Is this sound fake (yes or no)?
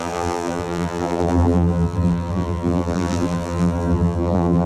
yes